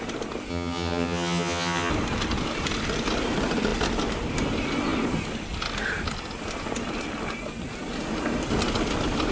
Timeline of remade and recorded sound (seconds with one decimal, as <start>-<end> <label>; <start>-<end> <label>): 0.0-0.5 recorded; 0.5-1.9 remade; 1.9-9.3 recorded